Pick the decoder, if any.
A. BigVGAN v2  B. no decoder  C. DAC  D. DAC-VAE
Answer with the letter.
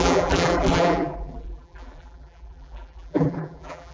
A